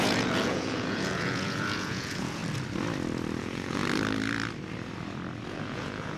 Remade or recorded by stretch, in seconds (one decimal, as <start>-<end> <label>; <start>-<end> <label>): 0.0-2.4 remade; 2.4-3.4 recorded; 3.4-3.8 remade; 3.8-5.5 recorded; 5.5-6.2 remade